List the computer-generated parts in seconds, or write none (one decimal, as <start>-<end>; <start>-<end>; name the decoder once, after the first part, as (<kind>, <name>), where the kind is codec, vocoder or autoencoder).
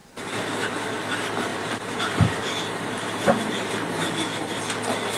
1.5-4.6 (vocoder, BigVGAN v2)